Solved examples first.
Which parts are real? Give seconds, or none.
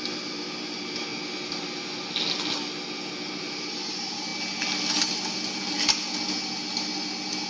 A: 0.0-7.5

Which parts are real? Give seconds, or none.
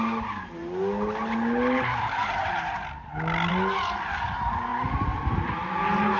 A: 0.0-6.2